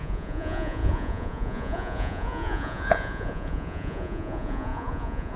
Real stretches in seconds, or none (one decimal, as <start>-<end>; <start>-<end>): none

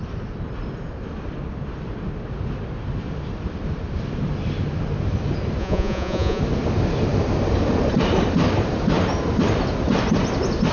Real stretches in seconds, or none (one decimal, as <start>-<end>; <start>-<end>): 0.0-5.6; 6.4-10.7

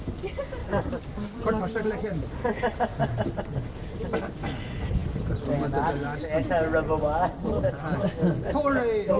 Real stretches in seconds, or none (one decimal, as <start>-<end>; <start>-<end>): 0.0-0.6; 1.6-9.2